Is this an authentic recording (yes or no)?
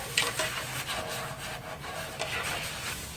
no